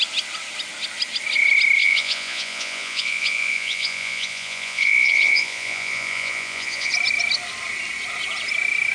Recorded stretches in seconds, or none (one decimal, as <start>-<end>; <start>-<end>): 0.0-1.8; 6.9-8.9